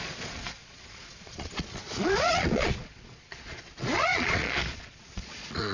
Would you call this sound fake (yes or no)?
yes